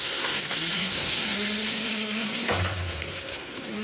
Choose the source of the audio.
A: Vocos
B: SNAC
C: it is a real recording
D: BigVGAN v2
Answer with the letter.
B